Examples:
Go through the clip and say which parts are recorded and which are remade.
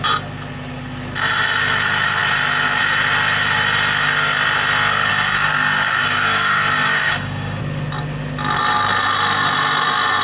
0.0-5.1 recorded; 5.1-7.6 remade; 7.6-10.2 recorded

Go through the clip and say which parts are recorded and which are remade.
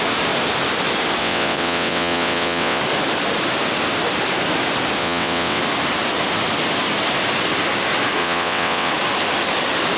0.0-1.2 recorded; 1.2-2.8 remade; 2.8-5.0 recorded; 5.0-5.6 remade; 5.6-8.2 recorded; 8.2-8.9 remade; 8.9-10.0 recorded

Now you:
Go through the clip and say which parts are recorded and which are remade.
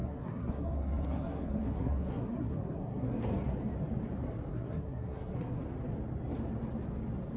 0.0-3.3 remade; 3.3-4.5 recorded; 4.5-5.6 remade; 5.6-7.4 recorded